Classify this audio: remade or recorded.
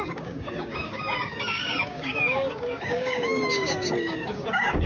remade